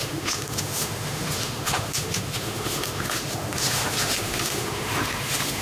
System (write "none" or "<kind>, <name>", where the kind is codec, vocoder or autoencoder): autoencoder, DAC-VAE